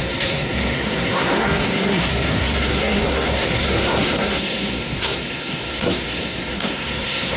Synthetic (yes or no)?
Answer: yes